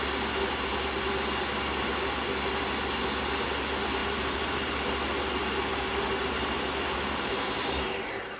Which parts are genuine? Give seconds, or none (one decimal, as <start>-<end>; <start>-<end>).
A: 0.0-4.0; 4.7-5.7; 7.3-8.4